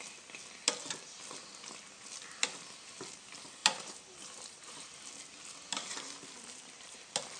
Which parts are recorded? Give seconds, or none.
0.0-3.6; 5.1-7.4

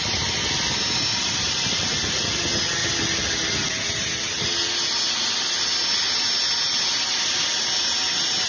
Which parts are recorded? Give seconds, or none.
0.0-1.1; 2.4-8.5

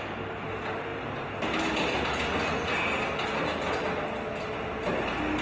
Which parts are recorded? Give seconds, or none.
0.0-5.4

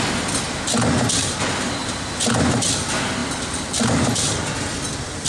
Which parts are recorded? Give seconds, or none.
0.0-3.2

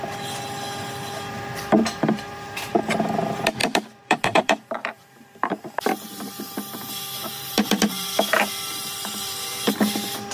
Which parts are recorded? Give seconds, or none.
0.0-1.8; 2.9-3.6; 6.4-7.2; 9.5-10.3

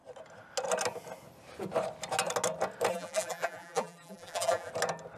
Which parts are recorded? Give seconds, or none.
0.0-2.9; 4.7-5.2

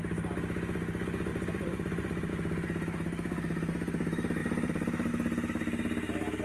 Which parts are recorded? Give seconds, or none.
0.0-1.3; 2.3-4.4; 5.1-6.4

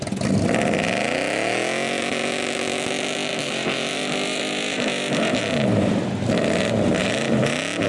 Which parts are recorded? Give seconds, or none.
0.0-3.3; 5.4-7.0; 7.5-7.9